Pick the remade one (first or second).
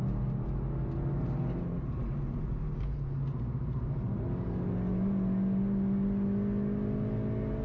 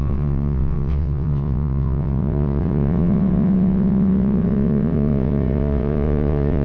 second